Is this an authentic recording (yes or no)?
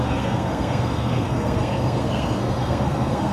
no